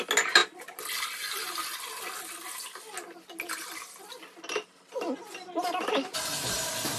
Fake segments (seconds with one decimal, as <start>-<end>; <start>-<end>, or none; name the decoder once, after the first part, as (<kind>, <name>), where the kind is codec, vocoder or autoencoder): none